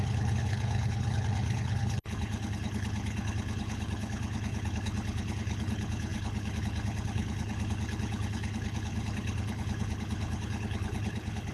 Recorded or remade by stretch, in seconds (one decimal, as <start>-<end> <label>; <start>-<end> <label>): 0.0-11.5 remade